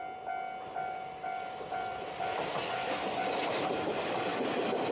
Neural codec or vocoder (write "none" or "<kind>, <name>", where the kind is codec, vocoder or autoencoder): none